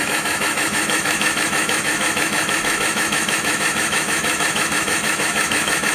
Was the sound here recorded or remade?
remade